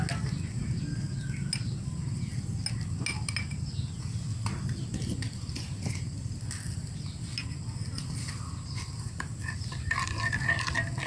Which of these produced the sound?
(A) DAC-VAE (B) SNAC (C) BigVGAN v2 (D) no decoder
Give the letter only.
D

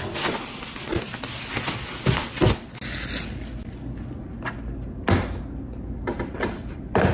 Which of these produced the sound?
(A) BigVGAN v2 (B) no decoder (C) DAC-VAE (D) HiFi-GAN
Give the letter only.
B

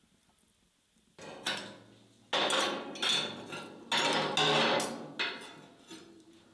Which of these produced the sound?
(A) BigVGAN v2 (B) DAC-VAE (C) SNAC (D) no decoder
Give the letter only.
D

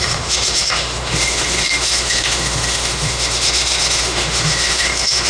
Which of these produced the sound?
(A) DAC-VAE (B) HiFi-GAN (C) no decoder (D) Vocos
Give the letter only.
A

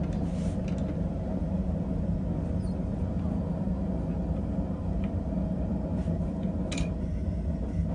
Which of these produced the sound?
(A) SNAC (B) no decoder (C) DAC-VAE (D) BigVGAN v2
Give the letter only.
B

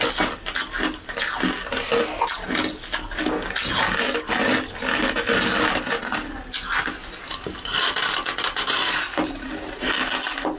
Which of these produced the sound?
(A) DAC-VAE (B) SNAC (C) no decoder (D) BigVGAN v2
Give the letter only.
C